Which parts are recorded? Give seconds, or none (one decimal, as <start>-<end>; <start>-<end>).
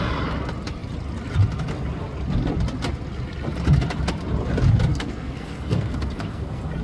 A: 0.0-4.9